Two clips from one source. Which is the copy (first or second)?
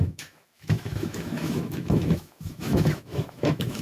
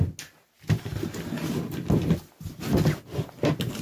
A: first